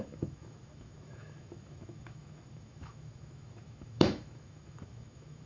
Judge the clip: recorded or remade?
remade